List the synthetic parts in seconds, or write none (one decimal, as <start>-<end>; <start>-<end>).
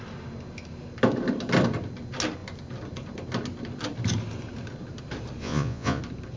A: 5.4-6.0